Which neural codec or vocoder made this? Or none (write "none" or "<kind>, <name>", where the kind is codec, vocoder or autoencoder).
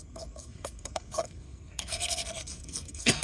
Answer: codec, SNAC